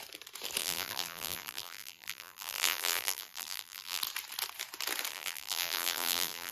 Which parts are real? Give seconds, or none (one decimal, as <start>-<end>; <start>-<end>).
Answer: 0.0-0.6; 4.0-5.1